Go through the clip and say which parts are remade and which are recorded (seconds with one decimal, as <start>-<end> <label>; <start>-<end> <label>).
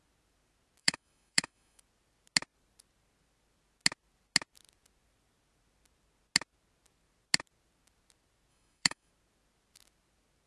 0.0-0.8 recorded; 0.8-1.8 remade; 1.8-8.5 recorded; 8.5-9.1 remade; 9.1-10.5 recorded